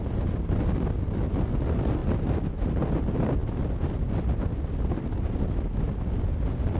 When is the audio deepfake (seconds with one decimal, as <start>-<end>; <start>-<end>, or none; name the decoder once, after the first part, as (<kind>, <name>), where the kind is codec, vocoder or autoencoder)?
none